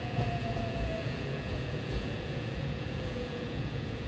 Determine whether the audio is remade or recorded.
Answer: remade